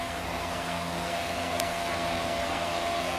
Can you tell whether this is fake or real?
fake